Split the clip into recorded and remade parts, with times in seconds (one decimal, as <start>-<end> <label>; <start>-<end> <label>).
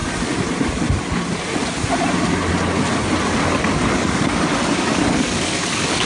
0.0-3.6 recorded; 3.6-6.0 remade